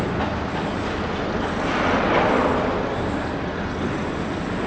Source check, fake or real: real